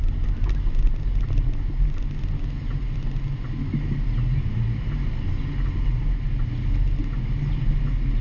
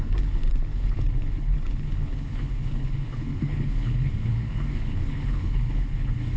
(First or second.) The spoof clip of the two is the second